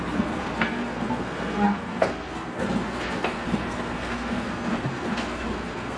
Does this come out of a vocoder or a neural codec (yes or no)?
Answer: yes